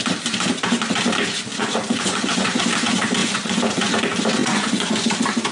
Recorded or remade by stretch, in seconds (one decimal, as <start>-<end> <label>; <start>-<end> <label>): 0.0-1.5 recorded; 1.5-2.6 remade; 2.6-3.2 recorded; 3.2-4.0 remade; 4.0-4.4 recorded; 4.4-5.1 remade; 5.1-5.5 recorded